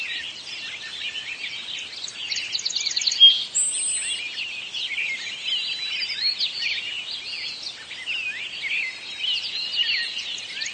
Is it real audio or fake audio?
real